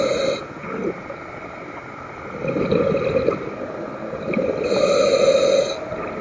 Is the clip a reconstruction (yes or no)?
no